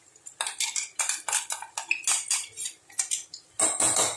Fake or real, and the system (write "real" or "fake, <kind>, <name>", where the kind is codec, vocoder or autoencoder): real